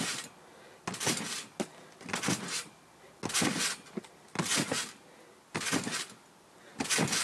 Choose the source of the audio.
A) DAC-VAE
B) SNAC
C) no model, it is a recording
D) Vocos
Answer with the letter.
C